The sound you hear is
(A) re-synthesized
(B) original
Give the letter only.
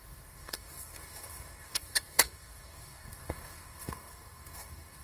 A